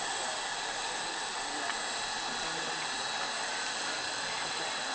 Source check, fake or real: real